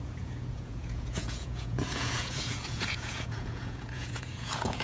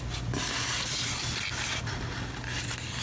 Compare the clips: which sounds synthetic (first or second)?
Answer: first